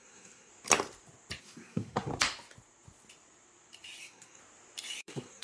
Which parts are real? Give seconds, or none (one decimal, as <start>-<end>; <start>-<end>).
0.5-1.4; 2.1-4.0; 4.4-5.0